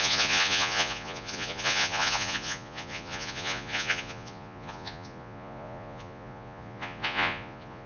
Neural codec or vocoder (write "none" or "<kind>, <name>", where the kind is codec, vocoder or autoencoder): vocoder, Vocos